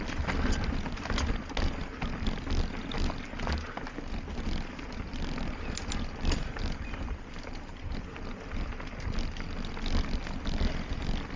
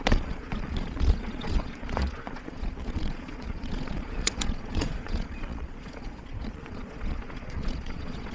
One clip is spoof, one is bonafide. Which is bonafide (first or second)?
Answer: first